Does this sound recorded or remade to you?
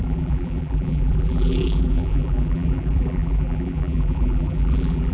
remade